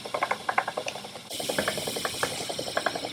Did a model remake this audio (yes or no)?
no